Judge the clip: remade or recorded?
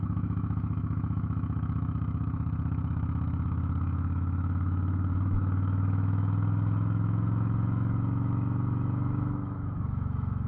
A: remade